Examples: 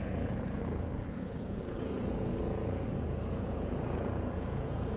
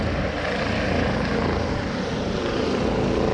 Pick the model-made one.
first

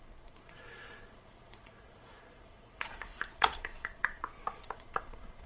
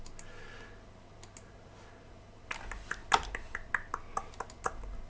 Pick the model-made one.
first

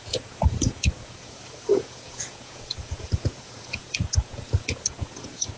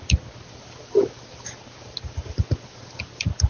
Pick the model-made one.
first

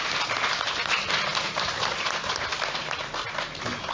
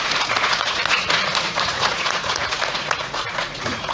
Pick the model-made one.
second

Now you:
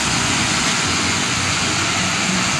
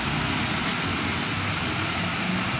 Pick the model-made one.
first